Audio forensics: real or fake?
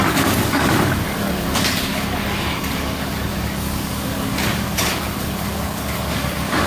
fake